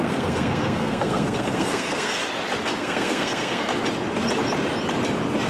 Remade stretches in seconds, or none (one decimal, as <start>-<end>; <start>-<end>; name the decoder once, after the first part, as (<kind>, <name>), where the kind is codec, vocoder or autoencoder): 0.0-2.2 (codec, SNAC); 2.8-3.7